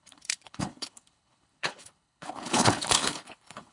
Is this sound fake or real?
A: fake